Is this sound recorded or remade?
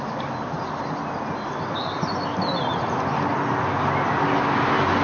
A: recorded